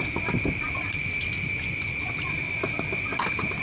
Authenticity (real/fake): real